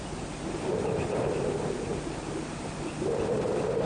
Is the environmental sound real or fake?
real